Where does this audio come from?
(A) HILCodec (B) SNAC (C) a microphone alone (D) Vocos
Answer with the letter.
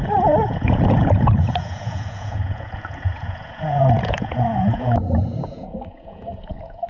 D